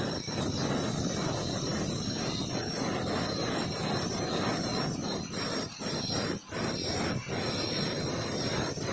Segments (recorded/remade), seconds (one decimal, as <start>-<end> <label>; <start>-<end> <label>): 0.0-8.9 recorded